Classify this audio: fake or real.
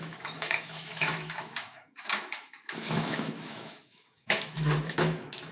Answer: fake